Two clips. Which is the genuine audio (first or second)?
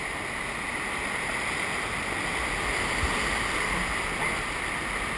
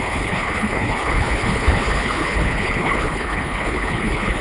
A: first